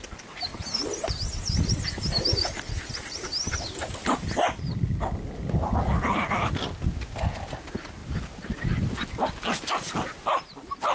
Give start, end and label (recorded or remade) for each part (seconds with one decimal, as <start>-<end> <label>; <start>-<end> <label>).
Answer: 0.0-10.9 recorded